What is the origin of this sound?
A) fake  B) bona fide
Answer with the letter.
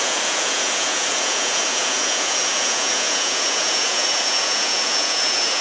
A